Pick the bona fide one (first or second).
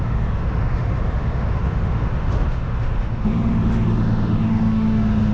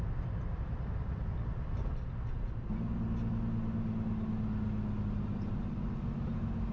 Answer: second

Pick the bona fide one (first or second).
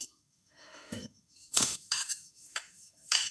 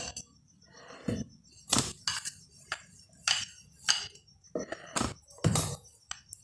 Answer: second